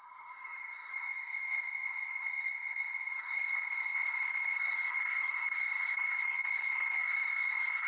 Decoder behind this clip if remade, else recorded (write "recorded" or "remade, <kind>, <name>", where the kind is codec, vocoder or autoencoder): remade, codec, SNAC